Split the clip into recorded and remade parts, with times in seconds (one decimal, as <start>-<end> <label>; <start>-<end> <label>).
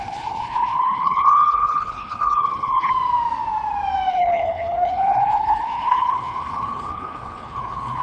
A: 0.0-2.9 remade; 2.9-4.1 recorded; 4.1-8.0 remade